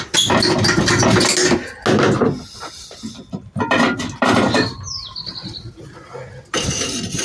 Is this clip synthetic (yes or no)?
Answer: no